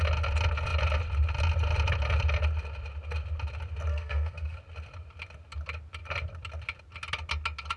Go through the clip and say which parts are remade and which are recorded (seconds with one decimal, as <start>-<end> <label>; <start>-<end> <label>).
0.0-3.9 recorded; 3.9-4.6 remade; 4.6-7.8 recorded